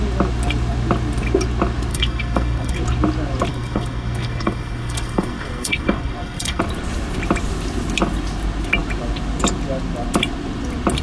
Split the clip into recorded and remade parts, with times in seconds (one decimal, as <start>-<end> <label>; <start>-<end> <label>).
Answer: 0.0-1.9 recorded; 1.9-2.8 remade; 2.8-3.5 recorded; 3.5-6.6 remade; 6.6-11.0 recorded